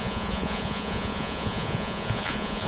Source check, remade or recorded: remade